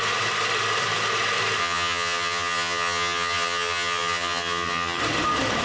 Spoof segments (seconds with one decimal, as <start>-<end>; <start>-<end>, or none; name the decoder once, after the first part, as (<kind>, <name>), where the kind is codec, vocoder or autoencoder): 1.6-5.0 (vocoder, HiFi-GAN)